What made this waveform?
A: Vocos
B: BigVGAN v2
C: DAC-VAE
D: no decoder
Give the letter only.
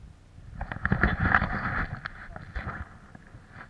D